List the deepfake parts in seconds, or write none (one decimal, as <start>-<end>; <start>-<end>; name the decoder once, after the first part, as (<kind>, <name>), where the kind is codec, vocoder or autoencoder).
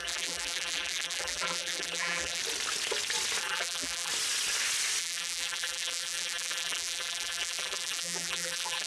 0.0-2.4 (vocoder, BigVGAN v2); 3.4-4.1; 5.0-8.9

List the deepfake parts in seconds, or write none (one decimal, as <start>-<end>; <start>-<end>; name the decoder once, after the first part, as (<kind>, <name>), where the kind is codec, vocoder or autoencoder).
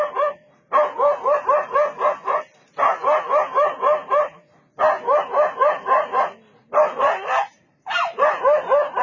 7.4-8.3 (vocoder, BigVGAN v2)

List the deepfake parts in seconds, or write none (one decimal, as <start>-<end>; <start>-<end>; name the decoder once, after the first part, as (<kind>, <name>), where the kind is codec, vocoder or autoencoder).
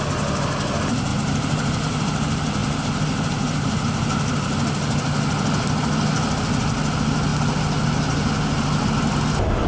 1.1-1.8 (vocoder, BigVGAN v2); 2.6-4.6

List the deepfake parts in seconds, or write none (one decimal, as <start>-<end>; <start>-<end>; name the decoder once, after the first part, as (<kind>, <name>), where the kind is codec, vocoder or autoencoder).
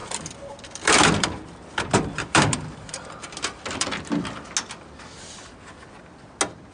0.0-4.0 (vocoder, BigVGAN v2)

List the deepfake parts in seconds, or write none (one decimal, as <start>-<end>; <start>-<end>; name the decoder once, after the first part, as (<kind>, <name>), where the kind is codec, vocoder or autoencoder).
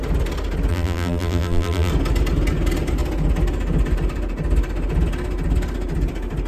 0.7-1.9 (vocoder, BigVGAN v2)